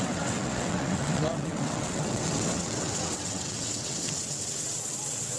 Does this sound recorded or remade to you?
remade